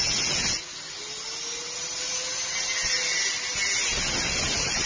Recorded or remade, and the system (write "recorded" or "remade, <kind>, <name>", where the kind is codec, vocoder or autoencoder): recorded